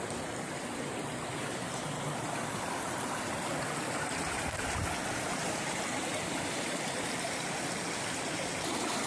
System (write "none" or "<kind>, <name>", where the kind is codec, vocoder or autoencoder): none